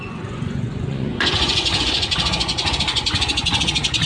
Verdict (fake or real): fake